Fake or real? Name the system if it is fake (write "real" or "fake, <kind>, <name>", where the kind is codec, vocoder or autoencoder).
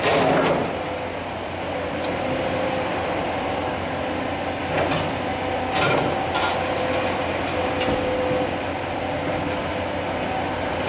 real